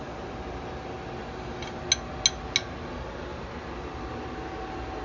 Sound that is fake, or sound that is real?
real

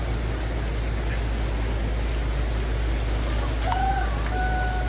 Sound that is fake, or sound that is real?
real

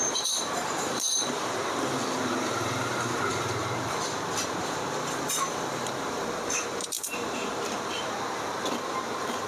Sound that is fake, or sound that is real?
fake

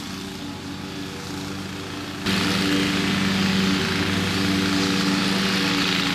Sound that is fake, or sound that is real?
real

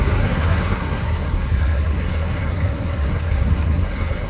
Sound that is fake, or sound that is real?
fake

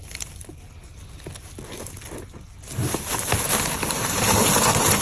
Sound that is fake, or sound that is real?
real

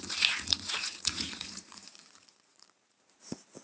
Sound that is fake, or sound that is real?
fake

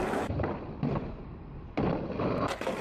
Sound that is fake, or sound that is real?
fake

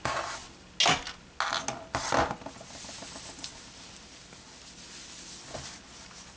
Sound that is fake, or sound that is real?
real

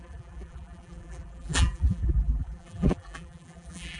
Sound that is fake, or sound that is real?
fake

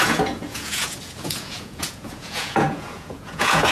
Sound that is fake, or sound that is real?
fake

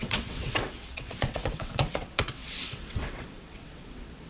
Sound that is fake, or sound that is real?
fake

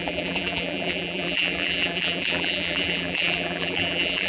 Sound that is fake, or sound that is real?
fake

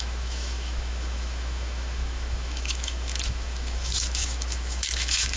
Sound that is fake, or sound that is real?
fake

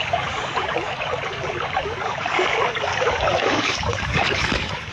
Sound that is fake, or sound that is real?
fake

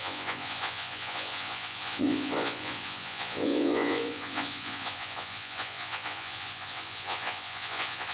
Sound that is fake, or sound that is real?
fake